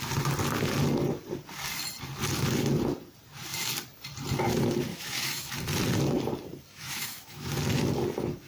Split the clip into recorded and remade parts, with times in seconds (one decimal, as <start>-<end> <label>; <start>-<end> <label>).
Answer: 0.0-4.9 recorded; 4.9-5.5 remade; 5.5-6.7 recorded; 6.7-7.5 remade; 7.5-8.5 recorded